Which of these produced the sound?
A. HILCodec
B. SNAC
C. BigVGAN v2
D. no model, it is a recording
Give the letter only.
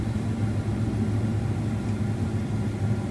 D